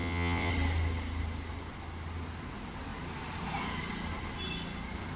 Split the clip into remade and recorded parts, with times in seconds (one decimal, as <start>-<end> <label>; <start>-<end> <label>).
0.0-0.5 remade; 0.5-5.2 recorded